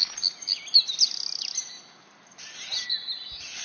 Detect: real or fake real